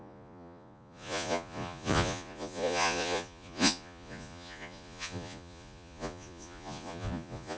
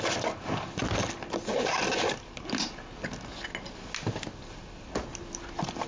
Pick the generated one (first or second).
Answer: first